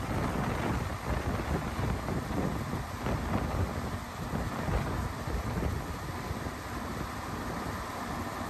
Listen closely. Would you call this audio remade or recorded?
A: recorded